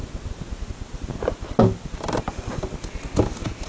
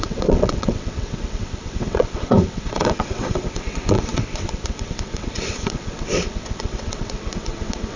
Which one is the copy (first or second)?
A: second